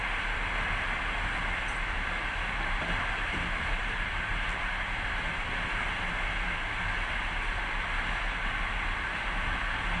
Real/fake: real